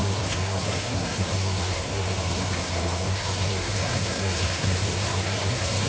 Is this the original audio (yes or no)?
no